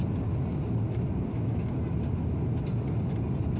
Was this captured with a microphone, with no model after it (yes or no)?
yes